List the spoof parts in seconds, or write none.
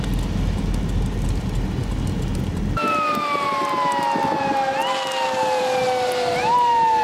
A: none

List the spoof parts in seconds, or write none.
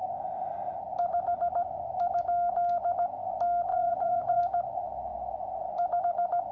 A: 3.7-4.4 (vocoder, Vocos)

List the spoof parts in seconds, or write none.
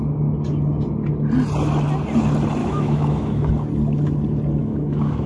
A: 2.6-3.5 (autoencoder, DAC-VAE); 4.6-5.3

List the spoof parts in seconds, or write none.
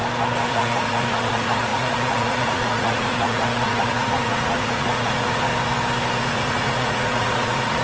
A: 0.5-5.5 (vocoder, Vocos); 6.2-7.8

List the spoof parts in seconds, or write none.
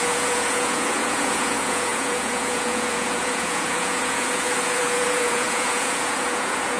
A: 0.0-6.8 (vocoder, Vocos)